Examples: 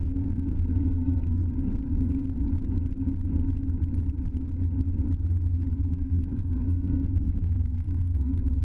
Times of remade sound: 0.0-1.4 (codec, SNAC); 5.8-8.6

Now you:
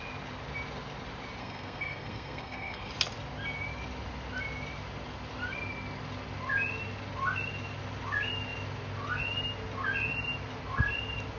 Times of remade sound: 1.4-2.9 (codec, SNAC)

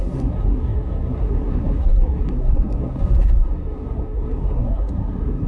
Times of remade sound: 0.0-5.5 (codec, SNAC)

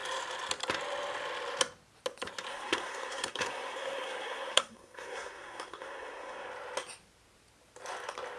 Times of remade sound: 2.5-6.5 (codec, SNAC)

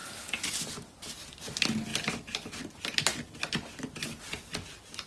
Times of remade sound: none

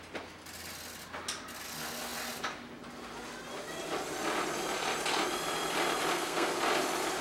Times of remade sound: 6.1-6.6 (codec, SNAC)

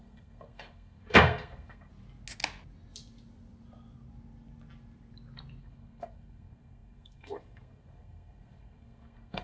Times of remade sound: 0.0-1.9 (codec, SNAC); 5.6-9.4

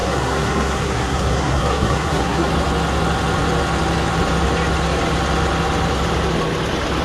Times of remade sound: 0.0-2.5 (codec, SNAC)